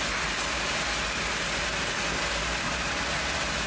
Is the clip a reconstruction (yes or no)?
no